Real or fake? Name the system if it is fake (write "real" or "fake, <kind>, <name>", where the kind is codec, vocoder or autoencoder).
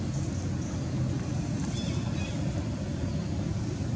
real